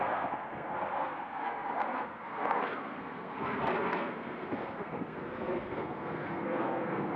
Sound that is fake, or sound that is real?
fake